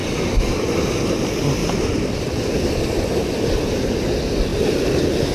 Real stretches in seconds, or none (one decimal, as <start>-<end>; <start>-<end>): 0.5-1.6; 4.0-4.5